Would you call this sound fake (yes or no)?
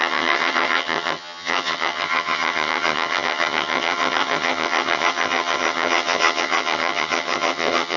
yes